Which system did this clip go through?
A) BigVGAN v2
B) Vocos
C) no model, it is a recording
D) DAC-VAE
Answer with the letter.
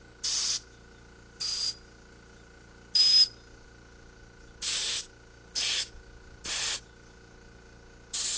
C